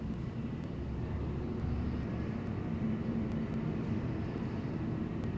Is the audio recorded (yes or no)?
yes